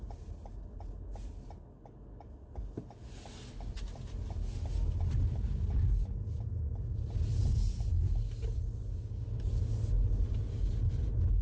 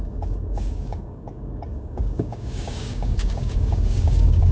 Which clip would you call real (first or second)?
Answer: first